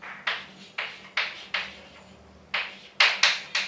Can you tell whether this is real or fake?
real